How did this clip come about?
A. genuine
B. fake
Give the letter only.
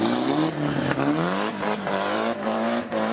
B